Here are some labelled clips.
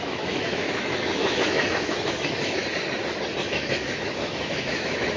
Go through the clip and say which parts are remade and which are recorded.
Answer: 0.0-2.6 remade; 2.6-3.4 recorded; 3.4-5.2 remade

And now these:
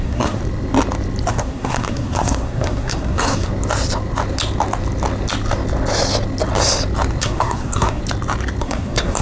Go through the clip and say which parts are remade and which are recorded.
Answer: 0.0-0.4 remade; 0.4-1.3 recorded; 1.3-3.5 remade; 3.5-7.2 recorded; 7.2-8.0 remade; 8.0-8.6 recorded; 8.6-9.2 remade

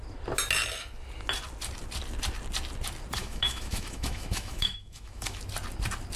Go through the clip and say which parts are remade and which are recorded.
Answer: 0.0-3.2 recorded; 3.2-5.4 remade; 5.4-6.2 recorded

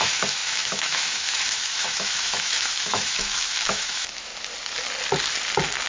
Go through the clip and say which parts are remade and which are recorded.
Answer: 0.0-4.3 remade; 4.3-5.9 recorded

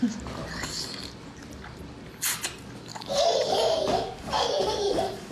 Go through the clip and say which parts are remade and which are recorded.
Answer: 0.0-2.9 recorded; 2.9-5.3 remade